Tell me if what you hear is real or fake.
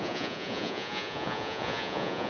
fake